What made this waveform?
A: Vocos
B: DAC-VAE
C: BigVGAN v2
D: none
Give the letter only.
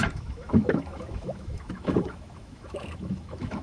B